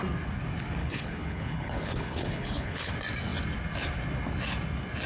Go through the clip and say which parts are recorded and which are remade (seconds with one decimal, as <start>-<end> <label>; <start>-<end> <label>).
0.0-0.8 recorded; 0.8-2.9 remade; 2.9-5.1 recorded